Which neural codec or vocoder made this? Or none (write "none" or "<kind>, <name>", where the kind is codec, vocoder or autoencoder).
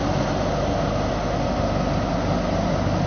none